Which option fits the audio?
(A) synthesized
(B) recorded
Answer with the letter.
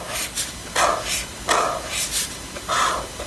B